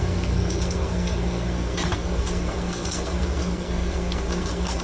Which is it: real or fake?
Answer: fake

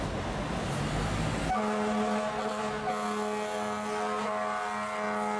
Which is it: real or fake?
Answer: real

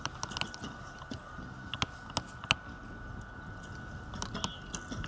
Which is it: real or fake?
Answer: real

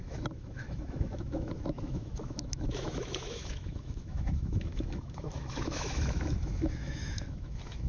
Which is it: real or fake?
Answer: fake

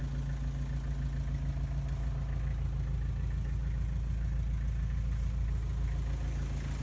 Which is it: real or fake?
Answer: real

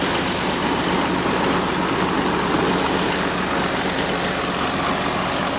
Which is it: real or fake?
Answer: real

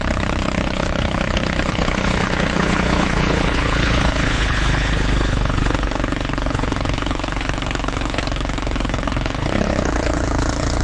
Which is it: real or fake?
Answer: fake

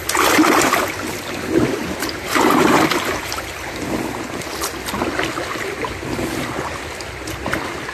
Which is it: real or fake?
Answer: real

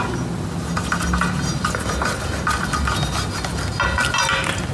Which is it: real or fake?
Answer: real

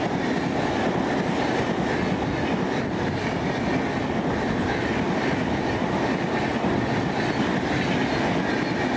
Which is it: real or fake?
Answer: real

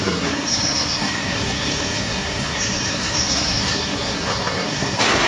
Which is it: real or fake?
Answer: fake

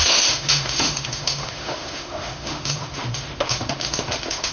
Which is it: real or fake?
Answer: fake